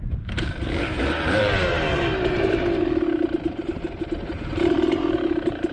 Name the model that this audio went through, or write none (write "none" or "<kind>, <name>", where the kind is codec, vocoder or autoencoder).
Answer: vocoder, BigVGAN v2